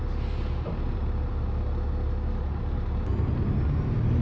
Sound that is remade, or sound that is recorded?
recorded